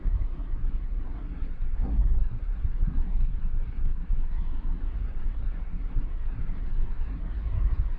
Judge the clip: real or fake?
fake